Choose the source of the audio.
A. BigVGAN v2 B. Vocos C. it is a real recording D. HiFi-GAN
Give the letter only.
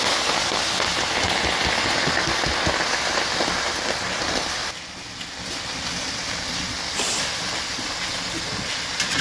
C